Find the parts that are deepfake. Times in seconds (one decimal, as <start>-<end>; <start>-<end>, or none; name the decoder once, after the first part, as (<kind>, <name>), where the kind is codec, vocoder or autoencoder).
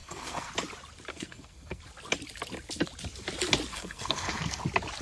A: 0.0-0.5 (codec, SNAC); 1.1-1.8; 3.7-4.6